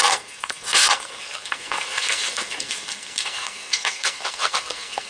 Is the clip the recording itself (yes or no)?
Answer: no